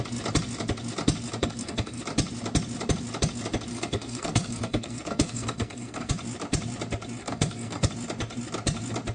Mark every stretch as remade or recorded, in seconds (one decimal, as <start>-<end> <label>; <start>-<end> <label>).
0.0-1.4 recorded; 1.4-2.0 remade; 2.0-3.7 recorded; 3.7-6.1 remade; 6.1-7.2 recorded; 7.2-7.9 remade; 7.9-9.1 recorded